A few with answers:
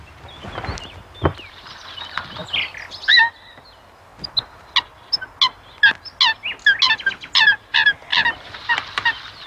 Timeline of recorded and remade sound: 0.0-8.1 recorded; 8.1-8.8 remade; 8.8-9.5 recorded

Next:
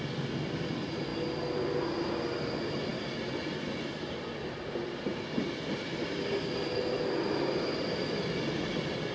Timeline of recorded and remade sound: 0.0-9.1 recorded

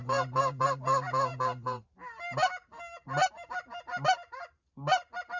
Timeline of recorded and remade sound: 0.0-5.4 recorded

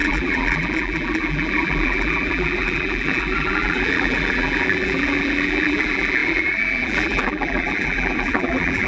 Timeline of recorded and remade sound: 0.0-8.9 remade

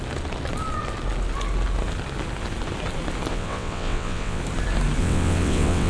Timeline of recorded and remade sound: 0.0-3.3 recorded; 3.3-4.4 remade; 4.4-5.0 recorded; 5.0-5.9 remade

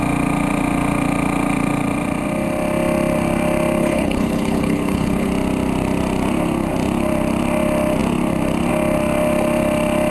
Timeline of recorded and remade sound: 0.0-3.8 recorded; 3.8-5.3 remade; 5.3-10.1 recorded

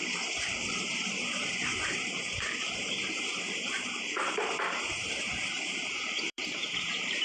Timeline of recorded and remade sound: 0.0-7.2 remade

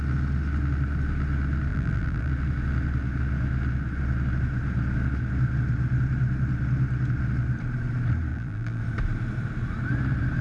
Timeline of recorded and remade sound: 0.0-1.7 recorded; 1.7-2.3 remade; 2.3-8.3 recorded; 8.3-8.8 remade; 8.8-10.4 recorded